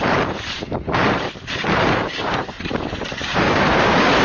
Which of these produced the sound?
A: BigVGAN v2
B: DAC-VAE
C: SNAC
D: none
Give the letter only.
A